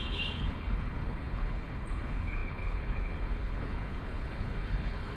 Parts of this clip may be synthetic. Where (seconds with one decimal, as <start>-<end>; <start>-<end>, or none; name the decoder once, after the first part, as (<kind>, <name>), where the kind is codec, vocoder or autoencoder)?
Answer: 0.0-5.2 (codec, HILCodec)